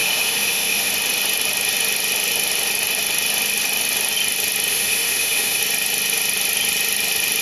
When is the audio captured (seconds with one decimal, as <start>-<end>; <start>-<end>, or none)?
0.9-4.7; 5.6-7.4